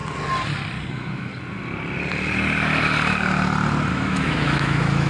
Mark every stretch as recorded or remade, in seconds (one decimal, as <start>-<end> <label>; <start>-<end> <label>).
0.0-0.9 recorded; 0.9-1.3 remade; 1.3-3.9 recorded; 3.9-5.1 remade